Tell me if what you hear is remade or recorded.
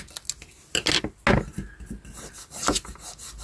recorded